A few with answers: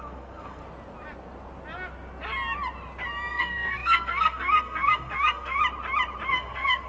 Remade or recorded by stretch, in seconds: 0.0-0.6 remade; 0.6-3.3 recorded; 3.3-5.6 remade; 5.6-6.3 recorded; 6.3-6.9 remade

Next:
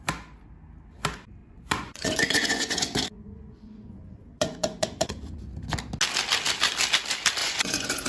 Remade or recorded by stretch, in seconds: 0.0-1.4 recorded; 1.4-5.4 remade; 5.4-7.4 recorded; 7.4-8.1 remade

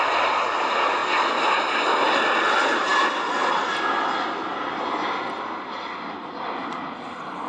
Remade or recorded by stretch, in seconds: 0.0-7.5 recorded

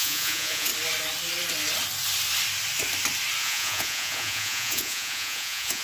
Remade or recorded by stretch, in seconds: 0.0-0.7 remade; 0.7-3.4 recorded; 3.4-5.8 remade

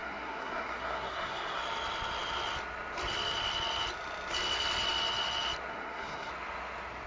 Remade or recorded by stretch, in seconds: 0.0-1.6 remade; 1.6-5.7 recorded; 5.7-6.3 remade; 6.3-7.1 recorded

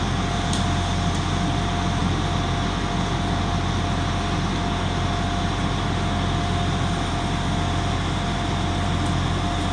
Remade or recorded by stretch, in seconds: 0.0-9.7 recorded